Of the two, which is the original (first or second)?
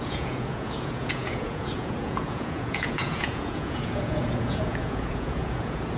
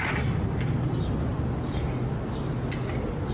second